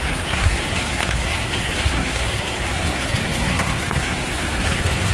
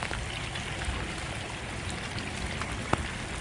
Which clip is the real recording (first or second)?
second